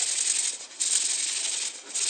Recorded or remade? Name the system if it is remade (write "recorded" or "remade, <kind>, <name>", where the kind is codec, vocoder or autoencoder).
recorded